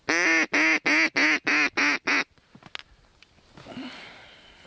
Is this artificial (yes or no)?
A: no